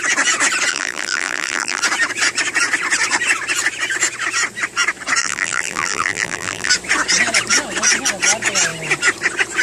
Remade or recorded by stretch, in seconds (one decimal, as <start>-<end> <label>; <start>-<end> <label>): 0.0-0.7 recorded; 0.7-1.8 remade; 1.8-5.2 recorded; 5.2-6.7 remade; 6.7-9.6 recorded